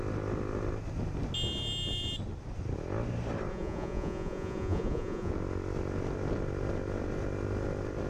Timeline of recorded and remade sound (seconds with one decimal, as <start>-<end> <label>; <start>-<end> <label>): 0.0-3.5 recorded; 3.5-5.3 remade; 5.3-8.1 recorded